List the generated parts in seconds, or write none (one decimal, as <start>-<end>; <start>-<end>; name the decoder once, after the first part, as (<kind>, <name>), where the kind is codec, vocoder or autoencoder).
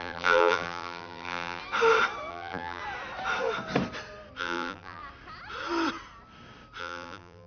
0.0-1.6 (vocoder, BigVGAN v2); 2.3-2.8; 4.4-5.0; 6.8-7.5